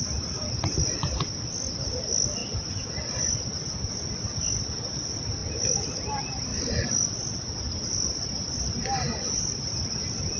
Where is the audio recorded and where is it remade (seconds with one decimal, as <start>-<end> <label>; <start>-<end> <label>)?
0.0-10.4 recorded